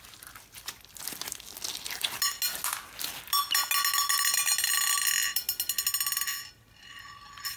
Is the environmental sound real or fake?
real